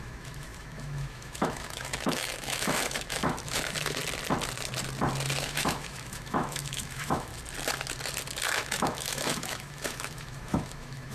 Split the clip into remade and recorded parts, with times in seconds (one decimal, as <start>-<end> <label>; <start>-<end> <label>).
0.0-4.0 remade; 4.0-5.4 recorded; 5.4-7.3 remade; 7.3-8.5 recorded; 8.5-11.1 remade